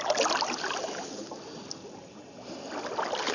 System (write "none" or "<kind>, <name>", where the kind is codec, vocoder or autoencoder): none